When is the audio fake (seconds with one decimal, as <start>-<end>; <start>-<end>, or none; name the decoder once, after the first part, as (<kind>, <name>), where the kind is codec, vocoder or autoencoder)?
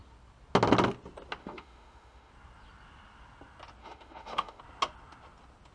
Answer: 1.4-2.3 (autoencoder, DAC-VAE); 3.8-4.6